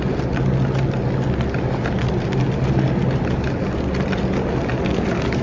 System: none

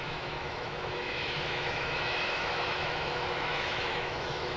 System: autoencoder, DAC-VAE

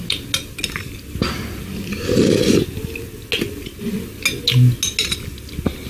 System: none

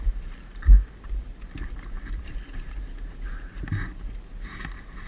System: vocoder, BigVGAN v2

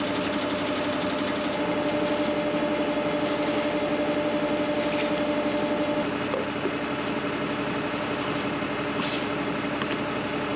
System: none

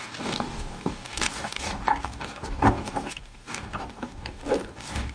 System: codec, DAC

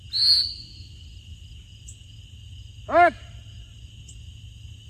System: none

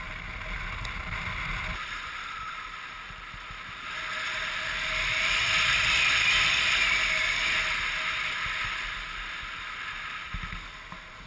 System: none